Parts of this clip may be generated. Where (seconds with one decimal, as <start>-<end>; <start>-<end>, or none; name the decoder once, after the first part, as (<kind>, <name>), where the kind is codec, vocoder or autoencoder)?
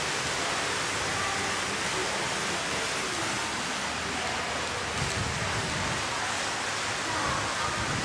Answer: none